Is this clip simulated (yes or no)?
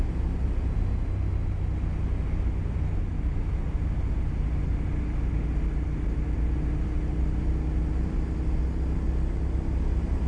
no